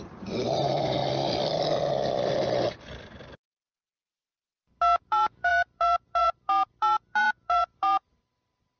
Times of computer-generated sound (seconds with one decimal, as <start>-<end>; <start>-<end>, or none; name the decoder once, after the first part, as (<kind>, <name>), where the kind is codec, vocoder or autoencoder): 0.0-1.0 (vocoder, BigVGAN v2); 5.0-8.8

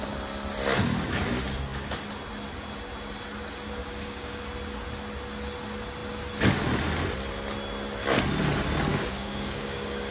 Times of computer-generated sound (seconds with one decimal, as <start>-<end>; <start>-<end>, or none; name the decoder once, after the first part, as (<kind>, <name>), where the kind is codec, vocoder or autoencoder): 3.8-4.4 (codec, DAC); 8.9-10.1

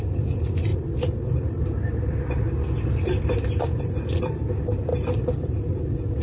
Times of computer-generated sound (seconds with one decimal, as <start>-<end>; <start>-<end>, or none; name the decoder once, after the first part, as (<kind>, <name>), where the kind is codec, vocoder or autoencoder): none

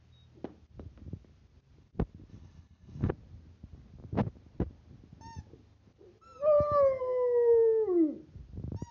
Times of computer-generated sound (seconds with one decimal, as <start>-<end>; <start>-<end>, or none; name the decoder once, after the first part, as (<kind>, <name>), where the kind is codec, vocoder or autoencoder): 2.3-3.1 (codec, HILCodec)

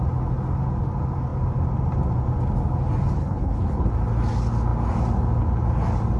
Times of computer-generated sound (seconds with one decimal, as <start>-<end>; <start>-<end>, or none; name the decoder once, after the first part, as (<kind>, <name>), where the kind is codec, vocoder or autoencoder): 3.2-3.9 (codec, HILCodec)

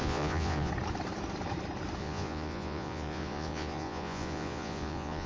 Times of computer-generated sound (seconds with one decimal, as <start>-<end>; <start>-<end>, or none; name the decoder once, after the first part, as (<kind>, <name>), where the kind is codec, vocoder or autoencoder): 0.0-0.7 (vocoder, Vocos); 2.0-5.3

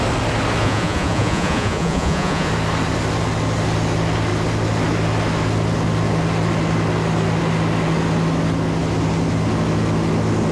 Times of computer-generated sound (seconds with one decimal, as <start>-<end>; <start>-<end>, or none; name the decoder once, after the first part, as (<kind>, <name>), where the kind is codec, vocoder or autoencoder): 0.6-2.5 (vocoder, Vocos)

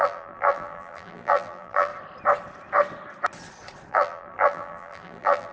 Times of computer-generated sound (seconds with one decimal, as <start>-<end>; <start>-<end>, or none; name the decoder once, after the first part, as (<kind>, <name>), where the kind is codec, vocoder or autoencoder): 0.0-1.9 (vocoder, BigVGAN v2); 3.9-5.5